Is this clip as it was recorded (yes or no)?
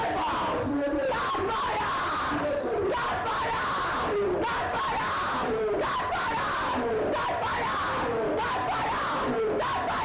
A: yes